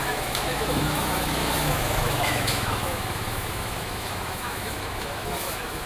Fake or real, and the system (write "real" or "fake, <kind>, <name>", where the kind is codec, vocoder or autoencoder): fake, autoencoder, DAC-VAE